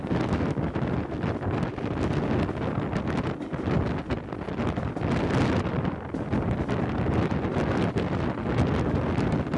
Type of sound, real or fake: real